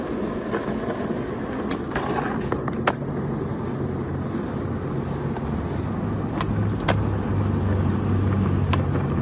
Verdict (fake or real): real